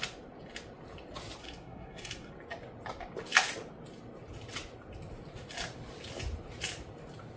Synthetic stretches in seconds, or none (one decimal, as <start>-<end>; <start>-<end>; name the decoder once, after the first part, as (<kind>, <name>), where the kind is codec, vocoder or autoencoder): 1.4-2.3 (codec, SNAC)